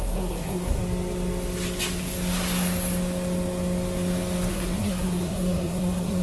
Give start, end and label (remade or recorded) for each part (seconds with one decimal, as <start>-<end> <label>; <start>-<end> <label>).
0.0-0.8 remade; 0.8-4.5 recorded; 4.5-6.2 remade